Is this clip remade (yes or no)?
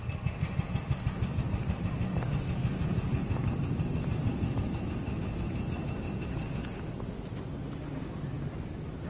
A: no